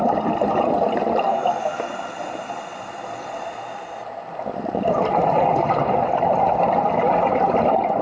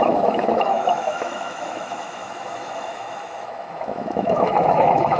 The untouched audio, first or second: first